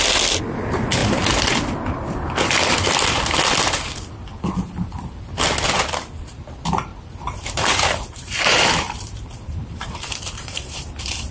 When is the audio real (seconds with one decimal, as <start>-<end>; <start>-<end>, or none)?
0.0-6.9; 10.9-11.3

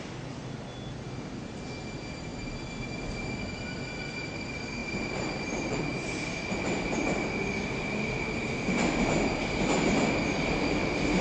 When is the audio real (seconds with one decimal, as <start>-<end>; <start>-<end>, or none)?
0.0-4.8; 5.8-11.2